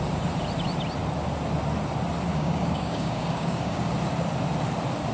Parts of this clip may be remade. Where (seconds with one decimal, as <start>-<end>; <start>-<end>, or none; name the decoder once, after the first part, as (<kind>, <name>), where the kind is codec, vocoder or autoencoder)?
2.3-3.9 (codec, DAC)